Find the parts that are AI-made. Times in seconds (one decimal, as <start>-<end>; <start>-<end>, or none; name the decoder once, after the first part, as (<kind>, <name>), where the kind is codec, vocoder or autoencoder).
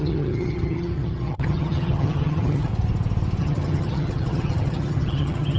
0.0-2.7 (vocoder, HiFi-GAN); 3.4-5.6